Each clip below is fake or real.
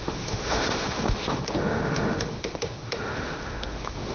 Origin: fake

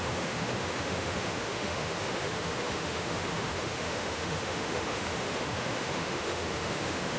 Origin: fake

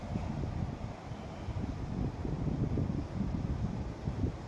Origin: real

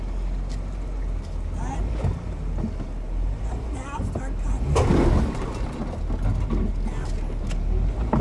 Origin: real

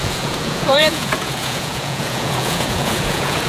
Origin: fake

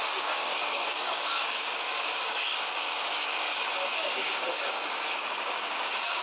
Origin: fake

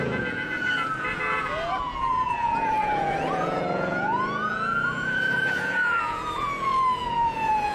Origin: fake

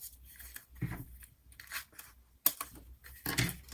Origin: real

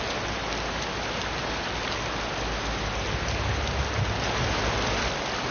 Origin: real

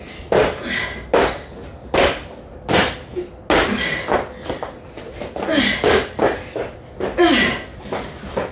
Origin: real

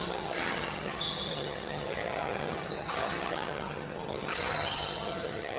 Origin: fake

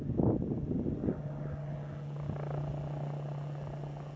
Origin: real